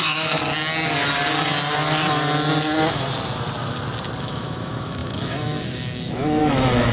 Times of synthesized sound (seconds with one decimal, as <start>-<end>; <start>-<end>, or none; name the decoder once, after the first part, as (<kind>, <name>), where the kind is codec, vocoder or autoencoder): 0.0-0.4 (autoencoder, DAC-VAE); 4.2-6.9